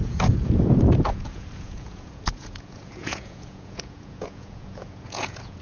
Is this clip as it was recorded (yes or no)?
no